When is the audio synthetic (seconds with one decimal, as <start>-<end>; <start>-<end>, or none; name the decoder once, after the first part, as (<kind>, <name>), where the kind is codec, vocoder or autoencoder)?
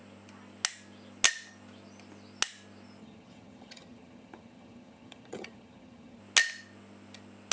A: 3.0-6.2 (vocoder, HiFi-GAN)